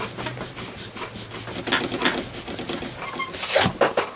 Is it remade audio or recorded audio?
recorded